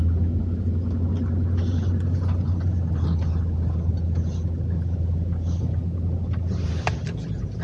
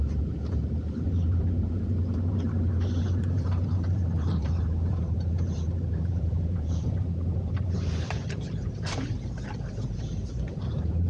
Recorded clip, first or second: first